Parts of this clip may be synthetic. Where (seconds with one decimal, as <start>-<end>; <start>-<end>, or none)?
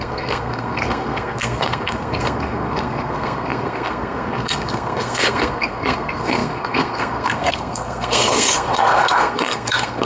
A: 0.0-10.1